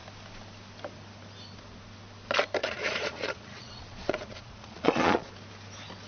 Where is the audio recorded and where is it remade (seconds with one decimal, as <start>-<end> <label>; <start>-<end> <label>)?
0.0-2.6 recorded; 2.6-5.3 remade; 5.3-6.1 recorded